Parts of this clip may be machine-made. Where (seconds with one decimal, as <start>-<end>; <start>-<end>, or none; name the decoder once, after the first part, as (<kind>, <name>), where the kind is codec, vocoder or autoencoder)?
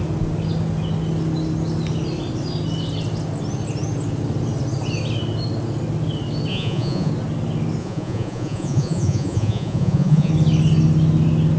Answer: 6.5-7.1 (vocoder, Vocos); 7.8-10.3